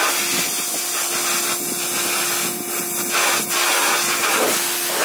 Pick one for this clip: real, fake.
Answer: real